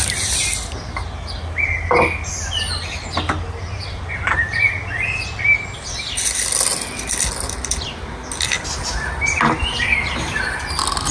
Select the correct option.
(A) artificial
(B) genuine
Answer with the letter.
B